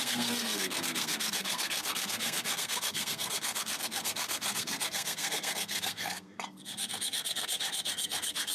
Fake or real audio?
fake